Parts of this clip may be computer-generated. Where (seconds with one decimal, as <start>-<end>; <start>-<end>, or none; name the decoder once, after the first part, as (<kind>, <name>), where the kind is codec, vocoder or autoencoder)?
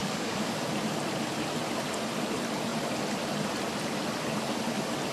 0.0-0.6 (codec, DAC)